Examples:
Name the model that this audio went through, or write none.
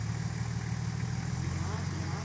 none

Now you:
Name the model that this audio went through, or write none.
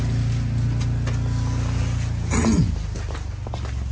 none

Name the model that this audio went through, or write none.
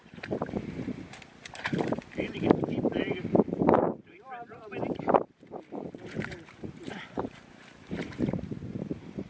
vocoder, BigVGAN v2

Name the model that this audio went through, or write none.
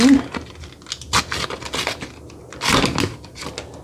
none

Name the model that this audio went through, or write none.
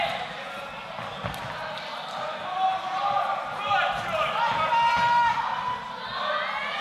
none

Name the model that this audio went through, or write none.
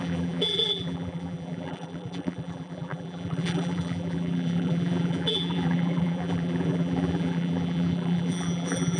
vocoder, BigVGAN v2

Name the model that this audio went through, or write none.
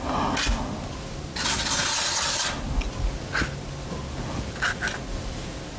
none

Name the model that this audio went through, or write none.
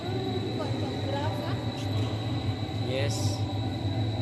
none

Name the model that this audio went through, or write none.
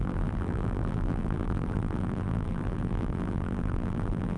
vocoder, BigVGAN v2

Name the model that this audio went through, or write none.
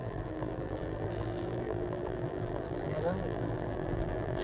vocoder, BigVGAN v2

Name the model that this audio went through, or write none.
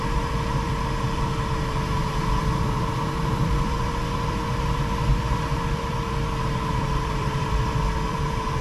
vocoder, BigVGAN v2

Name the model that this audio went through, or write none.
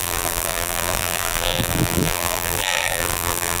vocoder, BigVGAN v2